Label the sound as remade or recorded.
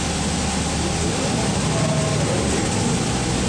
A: recorded